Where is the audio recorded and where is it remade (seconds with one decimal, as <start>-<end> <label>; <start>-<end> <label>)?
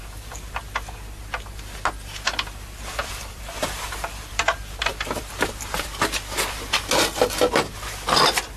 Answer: 0.0-3.0 recorded; 3.0-5.3 remade; 5.3-8.6 recorded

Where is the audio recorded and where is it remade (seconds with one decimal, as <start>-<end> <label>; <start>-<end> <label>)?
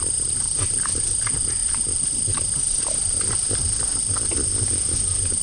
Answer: 0.0-1.6 recorded; 1.6-2.8 remade; 2.8-5.4 recorded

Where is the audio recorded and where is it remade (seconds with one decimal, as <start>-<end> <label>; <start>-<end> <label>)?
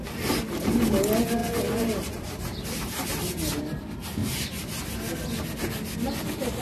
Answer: 0.0-1.4 recorded; 1.4-3.1 remade; 3.1-4.2 recorded; 4.2-4.8 remade; 4.8-6.6 recorded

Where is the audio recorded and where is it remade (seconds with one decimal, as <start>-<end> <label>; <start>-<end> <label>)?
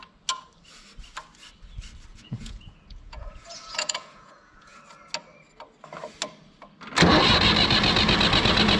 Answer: 0.0-2.1 recorded; 2.1-4.8 remade; 4.8-8.8 recorded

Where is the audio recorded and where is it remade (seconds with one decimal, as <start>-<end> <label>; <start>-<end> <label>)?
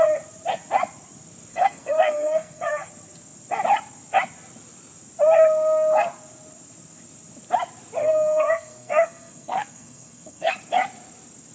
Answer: 0.0-1.5 recorded; 1.5-2.9 remade; 2.9-8.0 recorded; 8.0-10.5 remade; 10.5-11.5 recorded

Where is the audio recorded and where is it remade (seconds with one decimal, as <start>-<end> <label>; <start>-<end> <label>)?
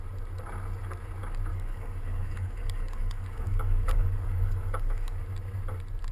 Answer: 0.0-1.5 recorded; 1.5-5.2 remade; 5.2-6.1 recorded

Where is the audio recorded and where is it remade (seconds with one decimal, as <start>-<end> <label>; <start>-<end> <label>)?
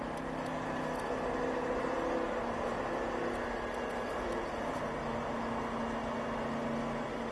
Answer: 0.0-7.3 recorded